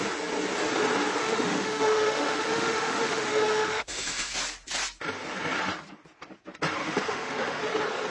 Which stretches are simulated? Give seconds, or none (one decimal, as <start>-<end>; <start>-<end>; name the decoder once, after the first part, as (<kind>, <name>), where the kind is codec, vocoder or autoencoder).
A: 1.2-4.3 (autoencoder, DAC-VAE); 6.8-7.6